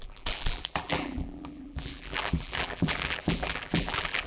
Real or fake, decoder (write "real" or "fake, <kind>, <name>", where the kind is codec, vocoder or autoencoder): fake, vocoder, BigVGAN v2